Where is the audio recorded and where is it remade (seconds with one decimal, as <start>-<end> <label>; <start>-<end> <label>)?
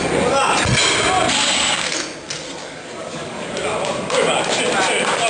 0.0-1.4 recorded; 1.4-2.0 remade; 2.0-2.6 recorded; 2.6-3.5 remade; 3.5-5.3 recorded